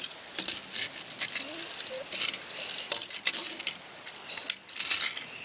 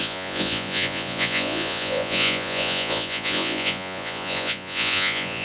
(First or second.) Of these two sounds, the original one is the first